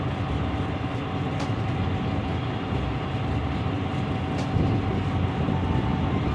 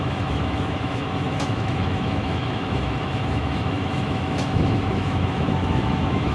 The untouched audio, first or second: first